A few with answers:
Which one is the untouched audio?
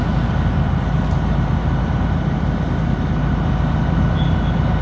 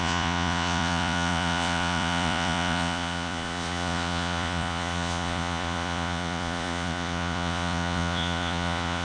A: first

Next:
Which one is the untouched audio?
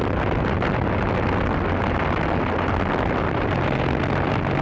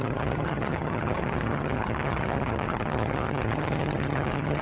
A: first